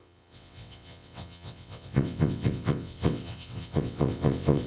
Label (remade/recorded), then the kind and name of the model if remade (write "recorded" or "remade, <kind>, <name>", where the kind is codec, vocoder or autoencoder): remade, vocoder, WaveNeXt